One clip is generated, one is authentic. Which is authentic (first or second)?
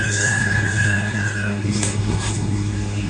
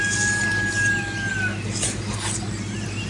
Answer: second